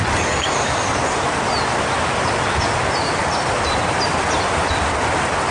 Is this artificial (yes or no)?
no